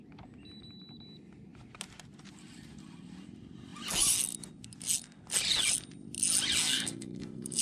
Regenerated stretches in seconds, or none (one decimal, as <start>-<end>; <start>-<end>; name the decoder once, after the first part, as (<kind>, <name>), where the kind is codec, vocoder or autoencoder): 6.6-7.6 (codec, SNAC)